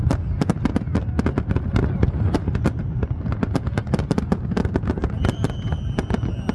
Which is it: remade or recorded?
recorded